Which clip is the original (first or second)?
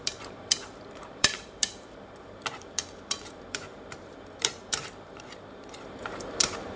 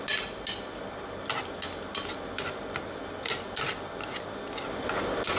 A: second